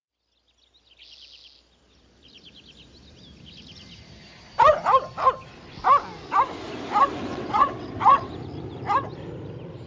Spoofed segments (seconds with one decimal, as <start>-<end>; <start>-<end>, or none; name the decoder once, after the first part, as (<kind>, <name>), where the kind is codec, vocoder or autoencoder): 7.3-8.3 (vocoder, WaveNeXt)